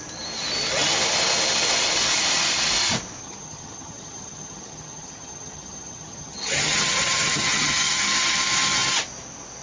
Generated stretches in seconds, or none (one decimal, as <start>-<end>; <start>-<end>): 3.2-8.4